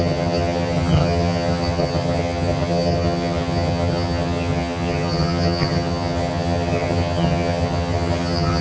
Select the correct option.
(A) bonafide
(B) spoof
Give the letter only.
B